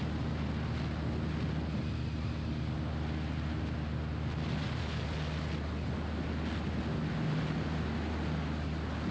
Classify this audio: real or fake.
real